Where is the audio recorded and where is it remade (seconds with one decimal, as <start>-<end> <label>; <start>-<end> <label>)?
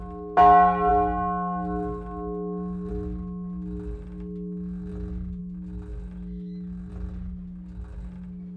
0.0-8.6 recorded